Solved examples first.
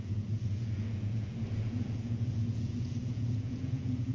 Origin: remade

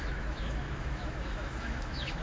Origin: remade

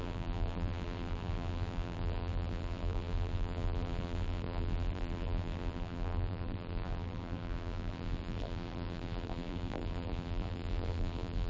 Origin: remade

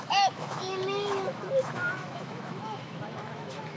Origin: remade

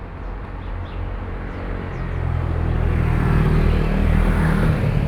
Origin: recorded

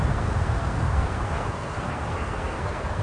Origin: remade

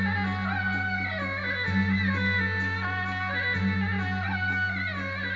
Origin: recorded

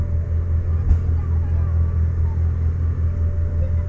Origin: recorded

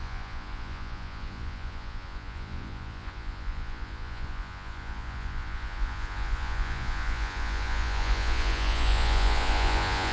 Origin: remade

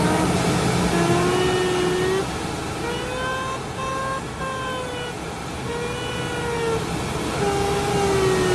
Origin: recorded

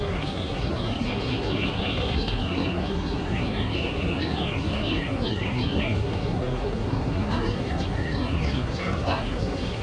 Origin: remade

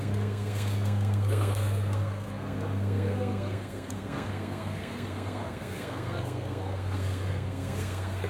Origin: remade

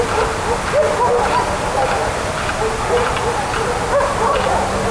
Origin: recorded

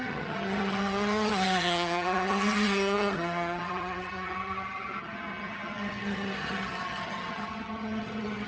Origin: remade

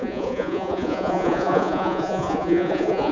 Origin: remade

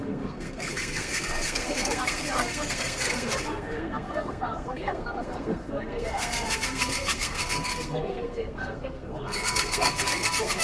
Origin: remade